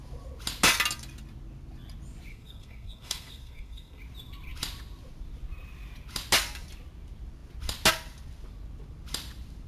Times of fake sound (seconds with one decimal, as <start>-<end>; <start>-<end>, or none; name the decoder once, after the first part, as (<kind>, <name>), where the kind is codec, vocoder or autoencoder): 2.3-4.0 (codec, SNAC)